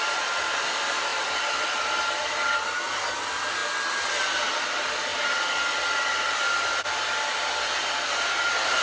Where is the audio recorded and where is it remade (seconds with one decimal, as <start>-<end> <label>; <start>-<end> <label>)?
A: 0.0-8.8 recorded